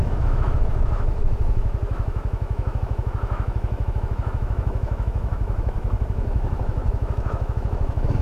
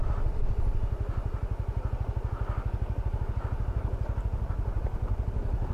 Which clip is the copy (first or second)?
first